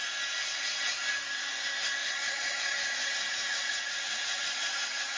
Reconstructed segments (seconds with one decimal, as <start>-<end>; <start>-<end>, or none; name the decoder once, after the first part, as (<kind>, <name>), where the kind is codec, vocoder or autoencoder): 2.0-5.2 (vocoder, Vocos)